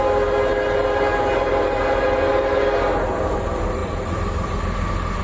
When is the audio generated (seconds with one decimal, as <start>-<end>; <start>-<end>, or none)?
none